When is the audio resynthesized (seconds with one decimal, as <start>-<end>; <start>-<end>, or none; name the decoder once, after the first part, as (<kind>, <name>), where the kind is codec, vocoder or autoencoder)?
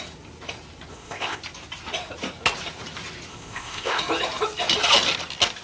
0.9-1.4 (codec, ZipCodec); 3.3-4.0